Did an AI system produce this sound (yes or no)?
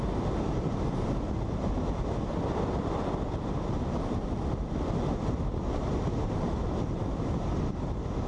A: no